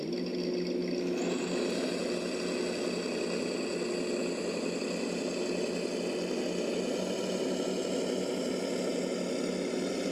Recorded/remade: recorded